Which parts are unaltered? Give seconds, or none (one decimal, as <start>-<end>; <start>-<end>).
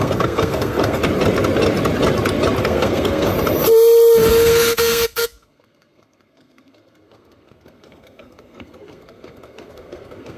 1.0-2.6; 3.3-4.3